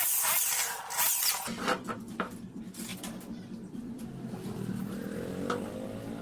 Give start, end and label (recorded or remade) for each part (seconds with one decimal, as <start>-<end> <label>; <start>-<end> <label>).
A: 0.0-6.2 recorded